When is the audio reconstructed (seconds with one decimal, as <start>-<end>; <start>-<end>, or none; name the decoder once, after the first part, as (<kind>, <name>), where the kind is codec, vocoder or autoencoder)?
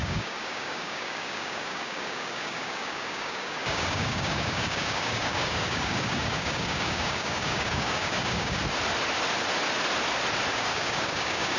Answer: 0.0-8.6 (codec, DAC); 10.5-11.6